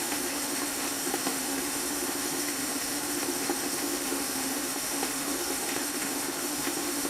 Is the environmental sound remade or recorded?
remade